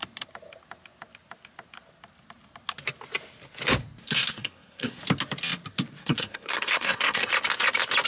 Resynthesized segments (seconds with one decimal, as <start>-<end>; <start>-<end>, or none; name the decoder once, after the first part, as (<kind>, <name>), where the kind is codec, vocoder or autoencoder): 4.0-5.0 (codec, SNAC); 6.0-7.3